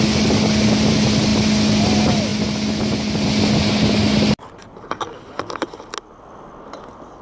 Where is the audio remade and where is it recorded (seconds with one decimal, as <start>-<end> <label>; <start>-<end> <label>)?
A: 0.0-7.2 recorded